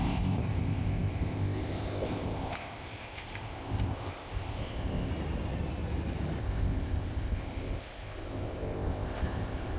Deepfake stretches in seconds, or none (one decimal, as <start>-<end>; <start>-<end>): 0.0-5.1; 6.4-9.8